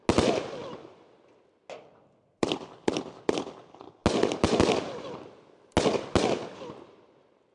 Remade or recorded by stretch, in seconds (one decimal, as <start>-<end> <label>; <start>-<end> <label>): 0.0-7.5 recorded